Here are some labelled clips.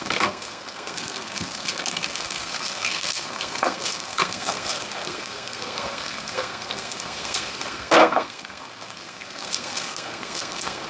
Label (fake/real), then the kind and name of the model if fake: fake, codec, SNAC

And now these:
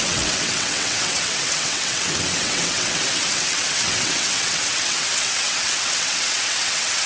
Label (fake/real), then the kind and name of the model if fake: fake, vocoder, WaveNeXt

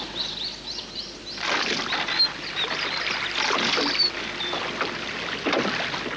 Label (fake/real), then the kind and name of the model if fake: real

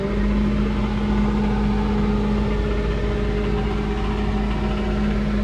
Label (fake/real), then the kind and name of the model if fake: real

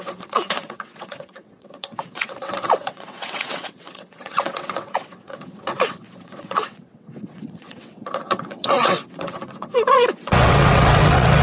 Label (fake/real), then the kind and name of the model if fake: fake, vocoder, WaveNeXt